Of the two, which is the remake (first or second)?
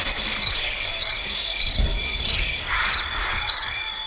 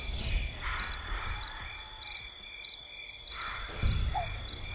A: first